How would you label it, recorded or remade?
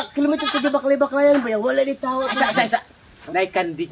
recorded